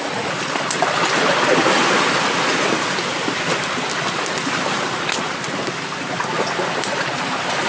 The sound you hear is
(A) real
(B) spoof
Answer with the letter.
A